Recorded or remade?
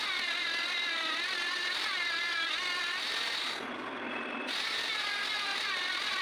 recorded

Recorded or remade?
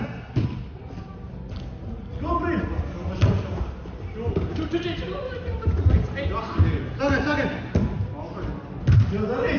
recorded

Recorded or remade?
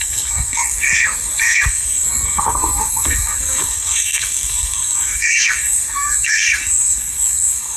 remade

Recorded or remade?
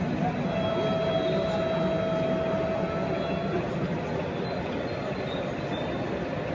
recorded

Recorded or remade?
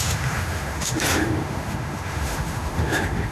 remade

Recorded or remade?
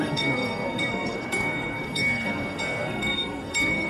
remade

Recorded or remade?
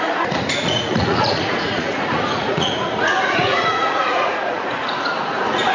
remade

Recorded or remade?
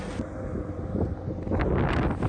recorded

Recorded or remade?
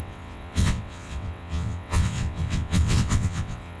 remade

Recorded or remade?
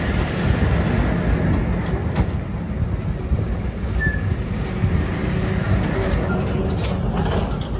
recorded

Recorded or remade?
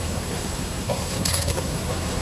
remade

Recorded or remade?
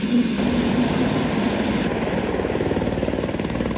recorded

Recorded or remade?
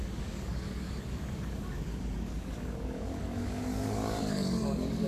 remade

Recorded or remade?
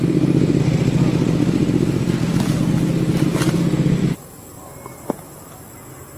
recorded